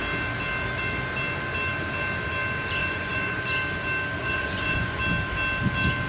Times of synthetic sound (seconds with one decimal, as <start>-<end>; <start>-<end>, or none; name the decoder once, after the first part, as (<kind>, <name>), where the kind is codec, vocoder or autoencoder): 2.8-3.4 (vocoder, Vocos); 4.2-5.0